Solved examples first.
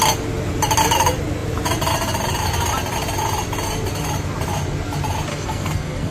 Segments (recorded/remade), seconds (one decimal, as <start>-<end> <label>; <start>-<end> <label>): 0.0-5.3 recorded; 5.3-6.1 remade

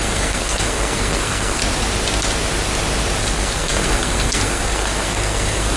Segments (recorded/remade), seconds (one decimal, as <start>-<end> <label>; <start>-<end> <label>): 0.0-1.6 remade; 1.6-3.2 recorded; 3.2-5.8 remade

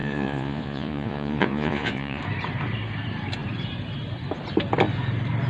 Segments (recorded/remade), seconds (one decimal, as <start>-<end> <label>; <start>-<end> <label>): 0.0-2.2 remade; 2.2-5.5 recorded

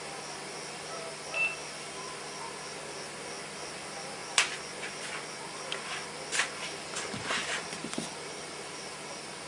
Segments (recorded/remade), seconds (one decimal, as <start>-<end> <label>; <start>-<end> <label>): 0.0-4.2 recorded; 4.2-5.6 remade; 5.6-9.5 recorded

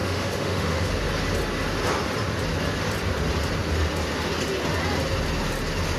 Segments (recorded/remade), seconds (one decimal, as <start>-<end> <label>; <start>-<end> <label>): 0.0-0.9 remade; 0.9-6.0 recorded

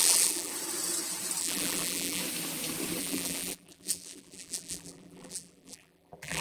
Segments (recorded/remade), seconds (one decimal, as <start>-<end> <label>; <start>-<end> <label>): 0.0-0.5 remade; 0.5-1.4 recorded; 1.4-2.2 remade; 2.2-3.0 recorded; 3.0-6.4 remade

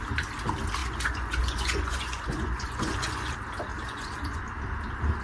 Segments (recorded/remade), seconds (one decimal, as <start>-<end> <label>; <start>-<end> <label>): 0.0-0.8 recorded; 0.8-3.3 remade; 3.3-3.7 recorded; 3.7-4.4 remade; 4.4-5.2 recorded